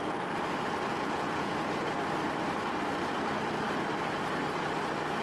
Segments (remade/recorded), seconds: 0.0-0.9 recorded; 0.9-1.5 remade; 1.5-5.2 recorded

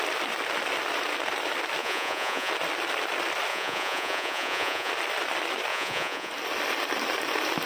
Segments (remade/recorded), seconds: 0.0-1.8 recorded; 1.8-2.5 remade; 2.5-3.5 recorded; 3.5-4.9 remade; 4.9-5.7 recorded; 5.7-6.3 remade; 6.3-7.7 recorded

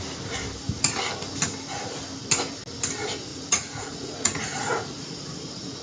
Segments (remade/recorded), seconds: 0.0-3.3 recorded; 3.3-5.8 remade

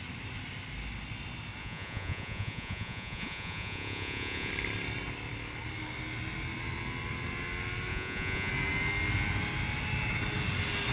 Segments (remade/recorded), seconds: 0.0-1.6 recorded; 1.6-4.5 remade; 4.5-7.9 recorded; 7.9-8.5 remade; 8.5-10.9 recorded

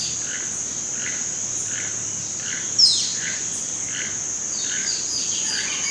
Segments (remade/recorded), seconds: 0.0-3.1 recorded; 3.1-3.6 remade; 3.6-4.8 recorded; 4.8-5.9 remade

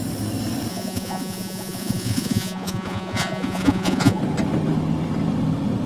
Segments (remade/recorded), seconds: 0.0-0.7 recorded; 0.7-4.2 remade; 4.2-5.9 recorded

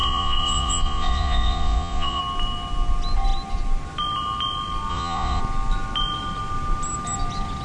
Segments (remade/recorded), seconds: 0.0-2.2 remade; 2.2-4.9 recorded; 4.9-5.4 remade; 5.4-7.6 recorded

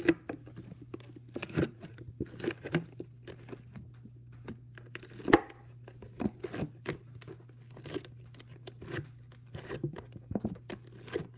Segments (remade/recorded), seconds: 0.0-1.4 recorded; 1.4-2.0 remade; 2.0-11.4 recorded